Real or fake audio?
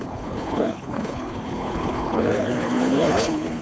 fake